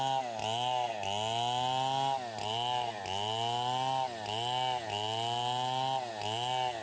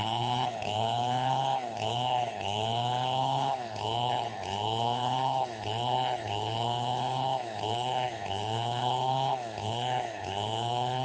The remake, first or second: second